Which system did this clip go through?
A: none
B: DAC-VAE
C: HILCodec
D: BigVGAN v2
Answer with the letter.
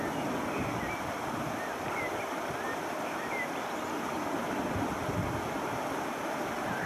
A